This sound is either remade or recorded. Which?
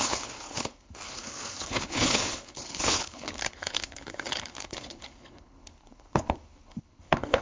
remade